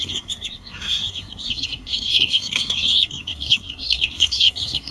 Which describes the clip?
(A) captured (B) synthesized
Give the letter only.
B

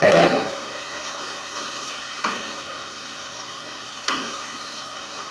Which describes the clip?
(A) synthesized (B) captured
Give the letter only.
A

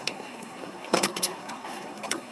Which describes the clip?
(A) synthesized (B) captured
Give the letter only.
A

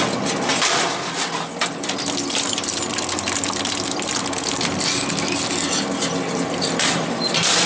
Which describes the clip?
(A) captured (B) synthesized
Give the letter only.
A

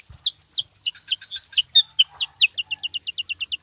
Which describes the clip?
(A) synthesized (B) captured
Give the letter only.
B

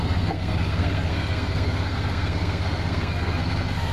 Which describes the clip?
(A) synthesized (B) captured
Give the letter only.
A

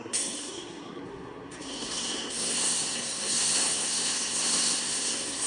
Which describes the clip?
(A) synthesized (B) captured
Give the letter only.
A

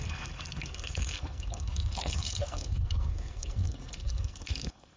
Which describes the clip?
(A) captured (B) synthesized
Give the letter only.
B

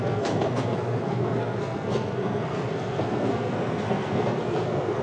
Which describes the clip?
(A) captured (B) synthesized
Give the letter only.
B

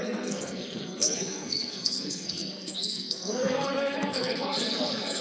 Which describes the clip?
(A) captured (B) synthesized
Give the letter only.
B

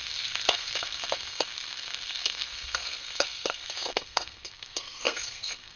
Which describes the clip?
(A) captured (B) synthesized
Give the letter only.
B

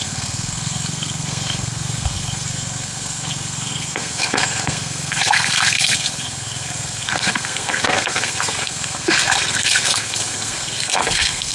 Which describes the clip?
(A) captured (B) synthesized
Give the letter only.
B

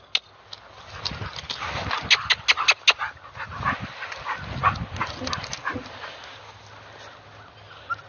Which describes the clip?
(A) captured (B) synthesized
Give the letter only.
A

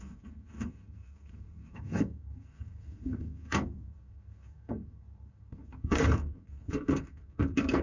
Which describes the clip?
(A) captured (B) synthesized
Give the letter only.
B